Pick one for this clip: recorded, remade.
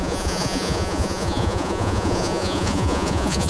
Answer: remade